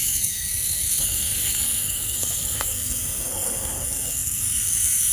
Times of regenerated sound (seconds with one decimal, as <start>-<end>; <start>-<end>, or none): 0.0-5.1